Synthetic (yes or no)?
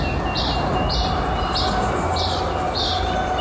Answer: no